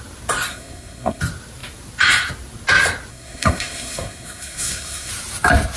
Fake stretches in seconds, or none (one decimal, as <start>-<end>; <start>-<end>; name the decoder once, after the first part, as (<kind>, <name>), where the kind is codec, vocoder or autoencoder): 0.5-1.2 (codec, SNAC); 3.1-5.1